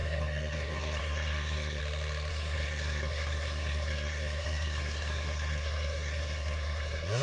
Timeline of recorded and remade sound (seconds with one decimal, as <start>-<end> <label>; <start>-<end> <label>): 0.0-1.8 remade; 1.8-2.3 recorded; 2.3-7.2 remade